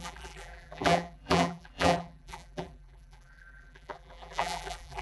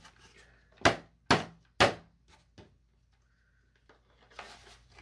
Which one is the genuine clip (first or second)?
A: second